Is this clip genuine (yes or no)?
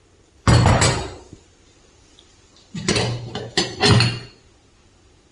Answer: yes